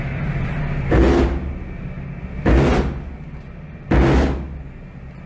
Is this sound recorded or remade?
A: recorded